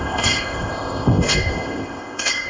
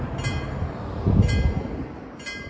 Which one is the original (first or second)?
second